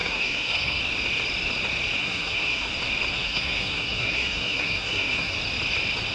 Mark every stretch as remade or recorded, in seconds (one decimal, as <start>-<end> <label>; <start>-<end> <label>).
0.0-0.8 remade; 0.8-2.0 recorded; 2.0-2.7 remade; 2.7-3.1 recorded; 3.1-5.4 remade; 5.4-6.1 recorded